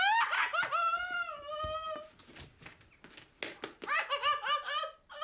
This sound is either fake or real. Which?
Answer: real